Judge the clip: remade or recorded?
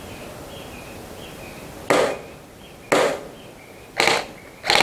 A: recorded